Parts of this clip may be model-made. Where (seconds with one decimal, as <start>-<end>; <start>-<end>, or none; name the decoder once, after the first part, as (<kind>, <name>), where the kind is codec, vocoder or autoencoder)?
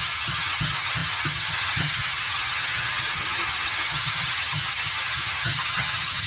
0.0-6.3 (vocoder, HiFi-GAN)